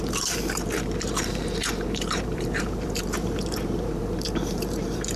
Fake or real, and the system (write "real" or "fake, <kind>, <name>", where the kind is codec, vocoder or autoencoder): fake, vocoder, BigVGAN v2